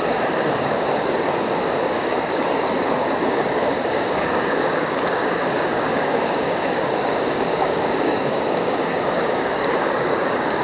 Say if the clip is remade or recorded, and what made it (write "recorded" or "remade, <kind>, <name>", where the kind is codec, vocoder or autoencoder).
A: remade, codec, DAC